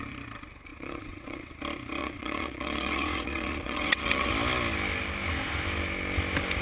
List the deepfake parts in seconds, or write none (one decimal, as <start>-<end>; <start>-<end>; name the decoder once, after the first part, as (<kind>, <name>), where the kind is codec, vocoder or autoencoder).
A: 0.7-1.5 (vocoder, WaveNeXt); 2.0-4.3

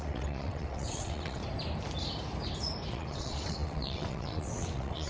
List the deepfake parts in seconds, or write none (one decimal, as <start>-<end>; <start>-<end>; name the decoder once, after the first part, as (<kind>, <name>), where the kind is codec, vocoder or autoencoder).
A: 0.0-1.4 (vocoder, WaveNeXt); 2.9-5.1